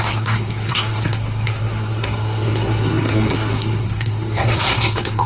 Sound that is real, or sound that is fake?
fake